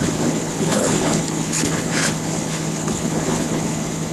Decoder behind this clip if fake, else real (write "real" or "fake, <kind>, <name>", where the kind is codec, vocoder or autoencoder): fake, codec, HILCodec